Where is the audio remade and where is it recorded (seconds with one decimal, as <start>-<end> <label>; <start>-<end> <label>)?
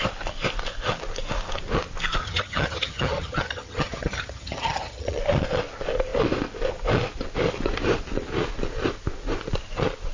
0.0-2.2 recorded; 2.2-5.2 remade; 5.2-10.1 recorded